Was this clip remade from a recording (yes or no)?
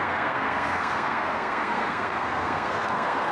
yes